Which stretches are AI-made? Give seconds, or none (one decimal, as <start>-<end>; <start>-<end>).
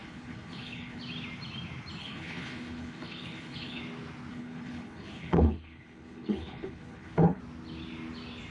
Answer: 0.0-1.0; 2.0-3.8; 4.3-7.4